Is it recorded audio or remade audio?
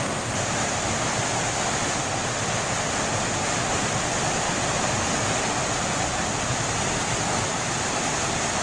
recorded